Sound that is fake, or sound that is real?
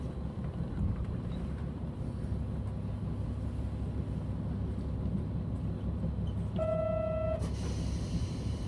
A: real